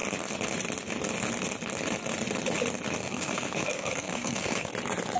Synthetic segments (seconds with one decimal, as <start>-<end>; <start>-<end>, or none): 3.0-4.7